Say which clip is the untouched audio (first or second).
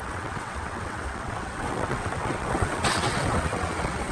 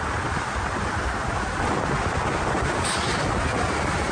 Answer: second